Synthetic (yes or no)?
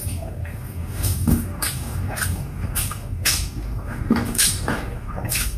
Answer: yes